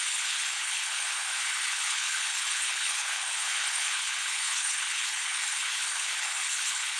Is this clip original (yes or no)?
no